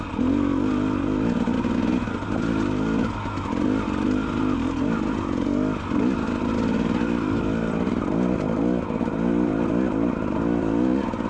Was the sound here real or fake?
real